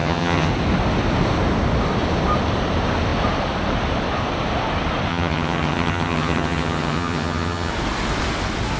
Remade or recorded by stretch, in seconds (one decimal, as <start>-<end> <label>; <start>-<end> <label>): 0.0-0.5 remade; 0.5-5.1 recorded; 5.1-7.7 remade; 7.7-8.8 recorded